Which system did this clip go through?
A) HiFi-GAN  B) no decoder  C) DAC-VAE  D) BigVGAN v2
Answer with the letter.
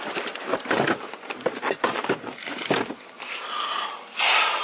D